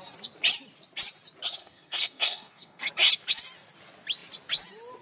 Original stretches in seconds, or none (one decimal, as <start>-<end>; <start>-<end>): 0.0-1.6; 2.9-5.0